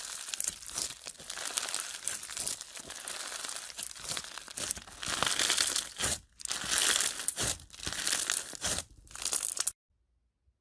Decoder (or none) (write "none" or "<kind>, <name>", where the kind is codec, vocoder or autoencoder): none